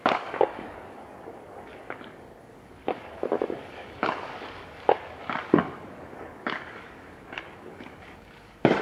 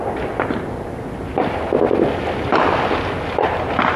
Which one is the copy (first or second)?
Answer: first